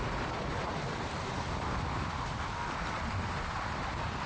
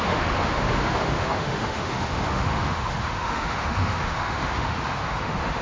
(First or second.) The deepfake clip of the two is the second